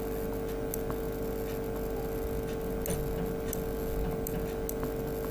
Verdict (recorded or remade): recorded